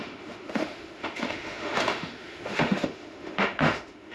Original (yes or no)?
no